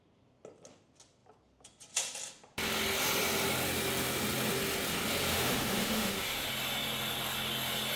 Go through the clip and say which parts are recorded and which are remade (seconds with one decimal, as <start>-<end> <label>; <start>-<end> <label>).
0.0-5.3 recorded; 5.3-6.5 remade; 6.5-8.0 recorded